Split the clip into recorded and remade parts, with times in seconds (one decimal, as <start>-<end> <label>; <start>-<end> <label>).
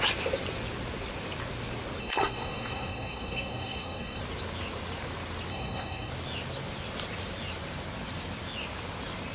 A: 0.0-2.0 recorded; 2.0-4.2 remade; 4.2-5.5 recorded; 5.5-6.1 remade; 6.1-9.3 recorded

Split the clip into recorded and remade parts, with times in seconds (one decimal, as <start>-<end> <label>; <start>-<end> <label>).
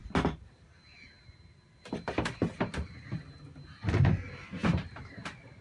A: 0.0-5.6 recorded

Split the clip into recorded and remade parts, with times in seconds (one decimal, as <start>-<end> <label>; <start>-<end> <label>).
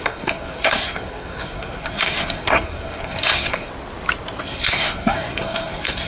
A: 0.0-3.7 remade; 3.7-4.4 recorded; 4.4-6.1 remade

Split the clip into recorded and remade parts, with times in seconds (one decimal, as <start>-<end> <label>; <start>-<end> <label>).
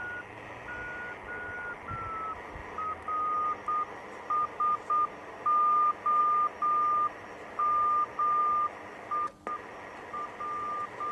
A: 0.0-11.1 recorded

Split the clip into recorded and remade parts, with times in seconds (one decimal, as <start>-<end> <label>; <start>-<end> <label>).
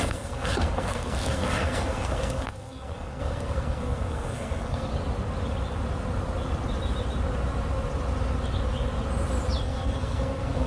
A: 0.0-4.9 remade; 4.9-9.6 recorded; 9.6-10.7 remade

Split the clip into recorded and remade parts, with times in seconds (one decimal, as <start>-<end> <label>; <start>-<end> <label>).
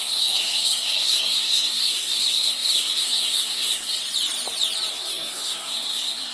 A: 0.0-4.0 remade; 4.0-4.9 recorded; 4.9-6.3 remade